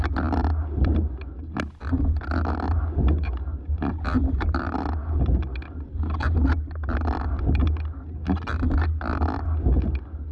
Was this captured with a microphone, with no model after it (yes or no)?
yes